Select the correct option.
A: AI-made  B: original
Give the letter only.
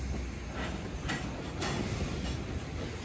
B